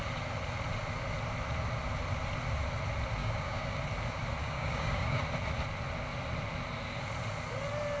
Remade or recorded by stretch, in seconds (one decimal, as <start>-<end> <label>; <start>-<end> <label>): 0.0-3.2 recorded; 3.2-3.8 remade; 3.8-4.4 recorded; 4.4-5.2 remade; 5.2-8.0 recorded